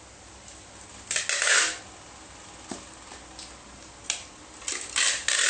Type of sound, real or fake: real